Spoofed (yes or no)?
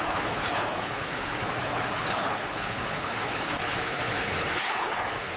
yes